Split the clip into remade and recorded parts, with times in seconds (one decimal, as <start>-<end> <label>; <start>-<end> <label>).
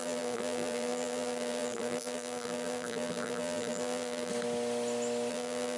0.0-4.3 remade; 4.3-5.3 recorded; 5.3-5.8 remade